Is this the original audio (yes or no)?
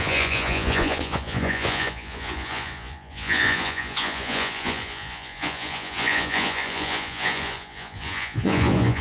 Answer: no